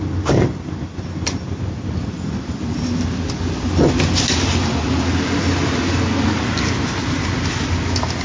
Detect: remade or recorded recorded